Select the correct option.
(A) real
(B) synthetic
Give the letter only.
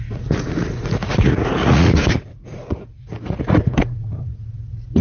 B